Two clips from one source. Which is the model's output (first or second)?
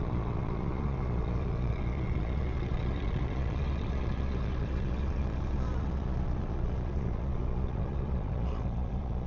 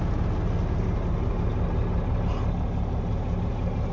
first